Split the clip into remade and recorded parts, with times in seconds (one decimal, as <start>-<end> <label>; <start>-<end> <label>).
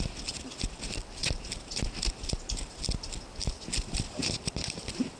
0.0-1.2 recorded; 1.2-2.7 remade; 2.7-4.2 recorded; 4.2-5.2 remade